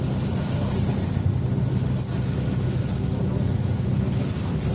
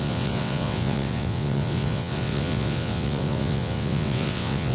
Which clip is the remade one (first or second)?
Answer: second